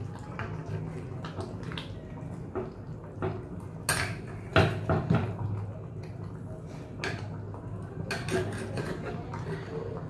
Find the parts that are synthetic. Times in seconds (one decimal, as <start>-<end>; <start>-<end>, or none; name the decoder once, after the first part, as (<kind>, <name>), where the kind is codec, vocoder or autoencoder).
none